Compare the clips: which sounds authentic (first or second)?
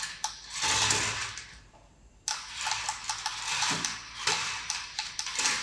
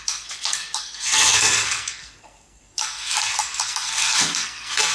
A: first